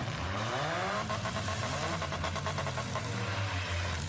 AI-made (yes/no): yes